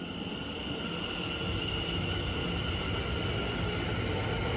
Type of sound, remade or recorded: recorded